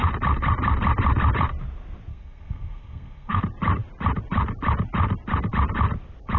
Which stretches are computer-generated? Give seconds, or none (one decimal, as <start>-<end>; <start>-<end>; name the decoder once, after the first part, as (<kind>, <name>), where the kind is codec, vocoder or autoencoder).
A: 2.1-3.4 (codec, SNAC)